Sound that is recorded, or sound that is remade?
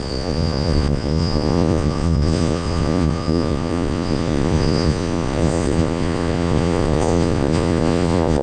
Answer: remade